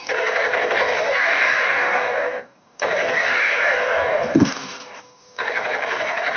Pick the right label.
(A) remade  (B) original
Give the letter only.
A